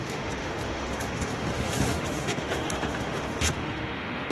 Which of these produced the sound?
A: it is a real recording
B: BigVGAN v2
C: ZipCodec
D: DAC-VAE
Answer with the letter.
D